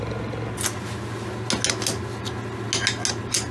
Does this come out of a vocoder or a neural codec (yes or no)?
no